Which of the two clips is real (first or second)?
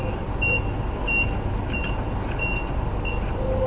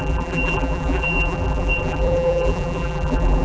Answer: first